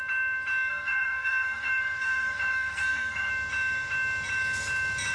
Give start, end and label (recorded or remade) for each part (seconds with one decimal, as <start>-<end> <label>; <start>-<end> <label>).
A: 0.0-0.7 recorded; 0.7-3.3 remade; 3.3-5.1 recorded